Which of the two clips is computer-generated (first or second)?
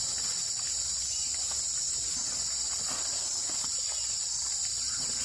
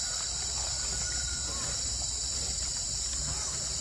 second